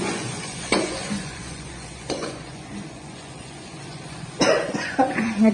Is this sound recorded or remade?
remade